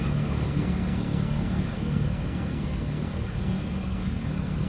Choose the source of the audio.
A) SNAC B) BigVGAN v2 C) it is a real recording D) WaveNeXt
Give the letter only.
A